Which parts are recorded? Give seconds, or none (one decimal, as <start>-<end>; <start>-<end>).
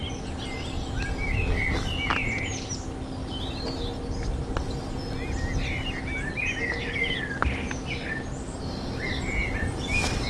0.0-10.3